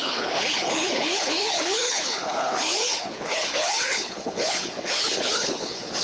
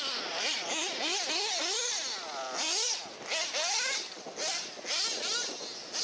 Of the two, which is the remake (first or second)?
first